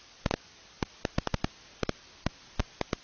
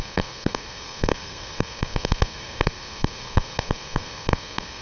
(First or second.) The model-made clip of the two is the second